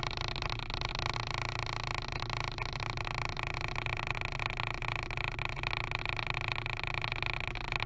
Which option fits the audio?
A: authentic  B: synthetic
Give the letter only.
A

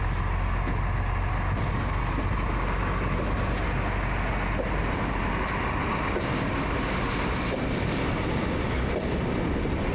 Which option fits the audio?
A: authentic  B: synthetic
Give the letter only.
A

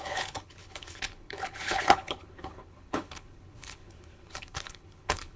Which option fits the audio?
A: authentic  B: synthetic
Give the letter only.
B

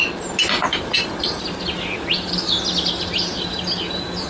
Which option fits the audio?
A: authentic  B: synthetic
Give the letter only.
A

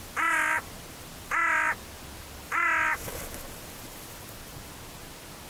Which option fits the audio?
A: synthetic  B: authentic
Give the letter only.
B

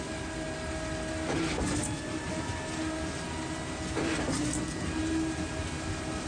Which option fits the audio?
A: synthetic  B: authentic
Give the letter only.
B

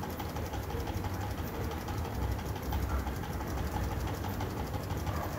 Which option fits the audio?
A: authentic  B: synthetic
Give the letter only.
A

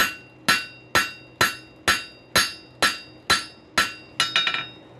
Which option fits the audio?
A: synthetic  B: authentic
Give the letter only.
B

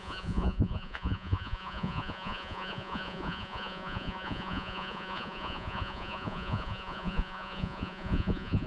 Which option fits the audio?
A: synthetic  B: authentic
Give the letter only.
A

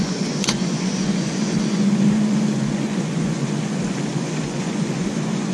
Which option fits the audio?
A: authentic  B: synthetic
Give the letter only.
B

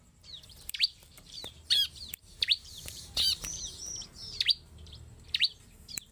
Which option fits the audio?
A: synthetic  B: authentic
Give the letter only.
A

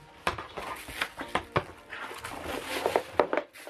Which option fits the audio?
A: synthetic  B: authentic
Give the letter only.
B